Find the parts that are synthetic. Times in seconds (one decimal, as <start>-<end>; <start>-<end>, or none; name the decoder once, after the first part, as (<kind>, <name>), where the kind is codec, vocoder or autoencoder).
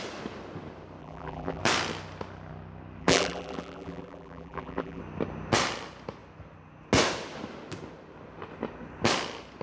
1.0-1.6 (vocoder, BigVGAN v2); 3.0-5.0